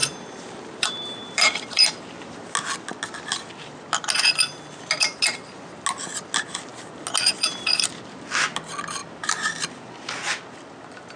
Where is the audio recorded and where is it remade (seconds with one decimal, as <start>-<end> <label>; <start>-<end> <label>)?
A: 0.0-2.5 remade; 2.5-9.0 recorded; 9.0-10.4 remade; 10.4-11.2 recorded